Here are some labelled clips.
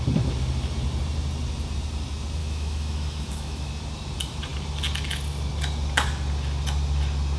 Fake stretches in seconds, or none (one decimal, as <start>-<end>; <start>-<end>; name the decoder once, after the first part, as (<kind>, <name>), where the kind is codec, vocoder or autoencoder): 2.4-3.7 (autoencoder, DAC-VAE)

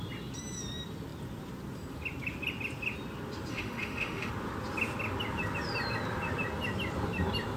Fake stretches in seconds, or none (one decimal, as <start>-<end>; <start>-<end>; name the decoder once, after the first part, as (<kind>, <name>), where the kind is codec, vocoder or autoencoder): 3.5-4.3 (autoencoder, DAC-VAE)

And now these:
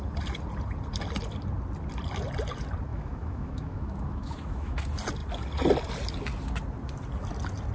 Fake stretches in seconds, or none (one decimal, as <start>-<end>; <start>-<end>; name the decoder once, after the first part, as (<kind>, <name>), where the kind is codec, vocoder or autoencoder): 2.9-4.8 (autoencoder, DAC-VAE)

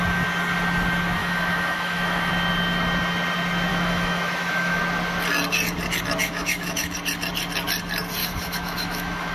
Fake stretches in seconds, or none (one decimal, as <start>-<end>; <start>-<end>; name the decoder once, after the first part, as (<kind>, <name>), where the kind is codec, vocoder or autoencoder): 1.2-2.3 (autoencoder, DAC-VAE); 3.7-4.8; 6.2-6.9; 8.2-9.3

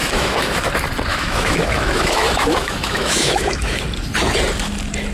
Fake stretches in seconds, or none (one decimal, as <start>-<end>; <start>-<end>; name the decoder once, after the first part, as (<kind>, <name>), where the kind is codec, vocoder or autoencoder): 0.0-0.7 (autoencoder, DAC-VAE); 1.1-3.8

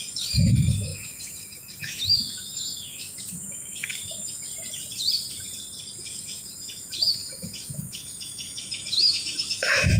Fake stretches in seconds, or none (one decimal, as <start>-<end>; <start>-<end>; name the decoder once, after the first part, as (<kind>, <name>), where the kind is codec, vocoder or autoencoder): 0.0-4.5 (autoencoder, DAC-VAE); 6.0-10.0

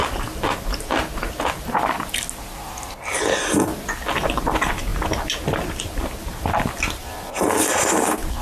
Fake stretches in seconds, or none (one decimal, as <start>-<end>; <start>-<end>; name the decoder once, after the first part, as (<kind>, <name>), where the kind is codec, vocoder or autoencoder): none